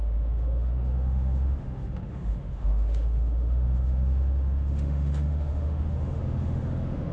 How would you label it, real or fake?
fake